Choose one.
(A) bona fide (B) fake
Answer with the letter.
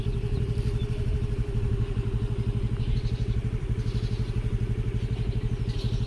A